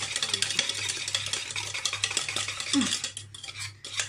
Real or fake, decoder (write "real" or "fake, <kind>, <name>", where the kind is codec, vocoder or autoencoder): real